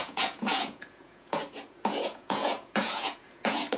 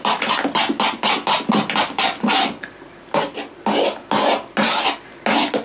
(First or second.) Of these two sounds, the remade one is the first